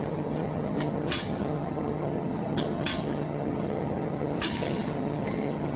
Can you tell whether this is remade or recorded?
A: remade